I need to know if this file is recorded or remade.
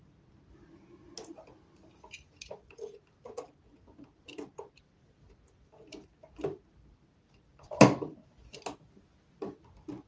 recorded